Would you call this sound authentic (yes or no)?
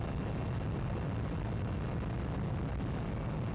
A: yes